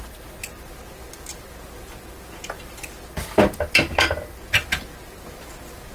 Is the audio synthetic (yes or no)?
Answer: no